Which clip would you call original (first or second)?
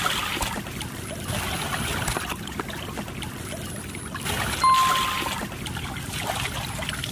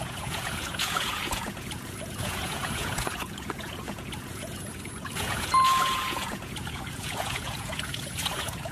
first